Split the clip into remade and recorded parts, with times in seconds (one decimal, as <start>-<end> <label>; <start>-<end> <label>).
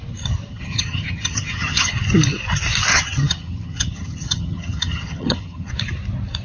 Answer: 0.0-0.5 recorded; 0.5-1.9 remade; 1.9-2.9 recorded; 2.9-5.7 remade; 5.7-6.4 recorded